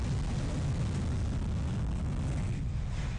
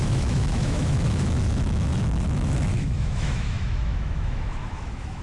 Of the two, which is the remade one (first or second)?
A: second